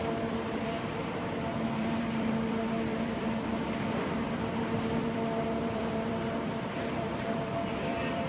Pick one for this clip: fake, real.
fake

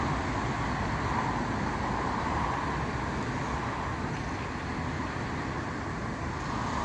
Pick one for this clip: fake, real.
real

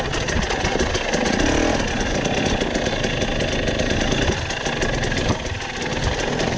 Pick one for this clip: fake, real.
real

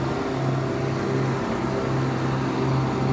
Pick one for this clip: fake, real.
real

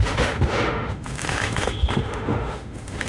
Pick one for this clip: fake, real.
fake